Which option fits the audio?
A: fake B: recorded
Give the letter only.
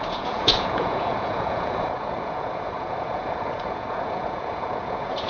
A